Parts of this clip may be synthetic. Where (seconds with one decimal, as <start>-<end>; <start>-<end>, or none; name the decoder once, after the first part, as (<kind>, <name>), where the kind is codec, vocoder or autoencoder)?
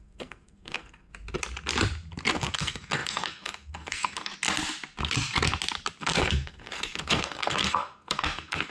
0.0-1.1 (codec, SNAC); 2.3-4.3; 6.0-8.7